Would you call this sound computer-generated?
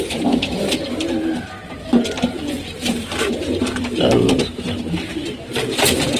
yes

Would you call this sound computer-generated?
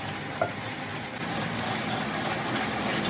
no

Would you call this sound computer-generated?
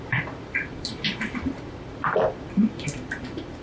yes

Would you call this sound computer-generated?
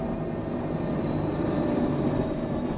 yes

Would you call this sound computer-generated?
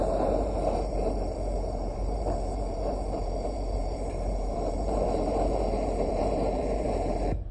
yes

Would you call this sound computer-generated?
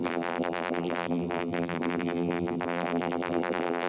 yes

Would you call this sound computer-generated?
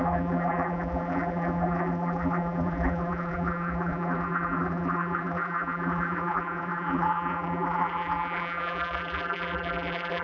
yes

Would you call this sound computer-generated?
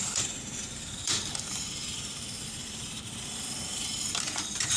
yes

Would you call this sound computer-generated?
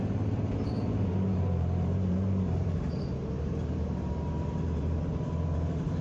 yes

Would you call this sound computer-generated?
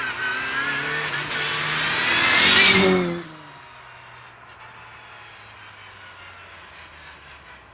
no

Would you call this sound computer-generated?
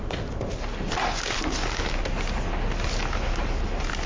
no